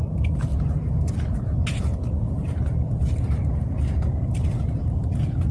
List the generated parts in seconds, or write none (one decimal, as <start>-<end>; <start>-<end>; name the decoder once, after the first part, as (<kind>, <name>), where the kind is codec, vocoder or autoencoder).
0.0-0.5 (vocoder, BigVGAN v2); 1.7-5.5